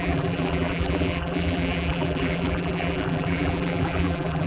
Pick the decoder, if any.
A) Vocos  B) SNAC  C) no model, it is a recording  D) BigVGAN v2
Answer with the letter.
D